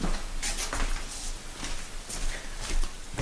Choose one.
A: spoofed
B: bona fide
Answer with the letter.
B